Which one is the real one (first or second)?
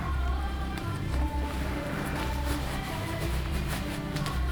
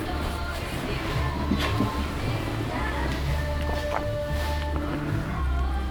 second